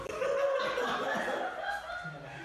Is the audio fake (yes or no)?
no